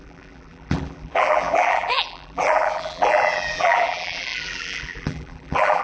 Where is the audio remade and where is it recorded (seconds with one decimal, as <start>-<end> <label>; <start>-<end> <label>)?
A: 0.0-5.8 remade